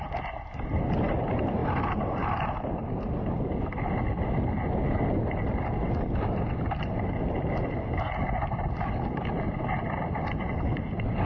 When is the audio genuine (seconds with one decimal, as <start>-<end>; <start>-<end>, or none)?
0.0-11.3